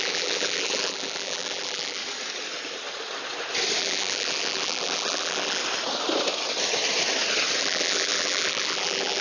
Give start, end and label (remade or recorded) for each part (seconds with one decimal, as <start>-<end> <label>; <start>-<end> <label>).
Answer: 0.0-2.0 remade; 2.0-3.8 recorded; 3.8-5.6 remade; 5.6-7.6 recorded; 7.6-9.2 remade